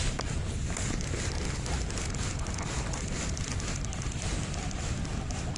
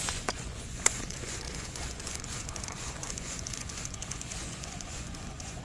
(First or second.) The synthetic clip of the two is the second